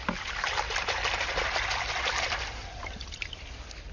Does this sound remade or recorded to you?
recorded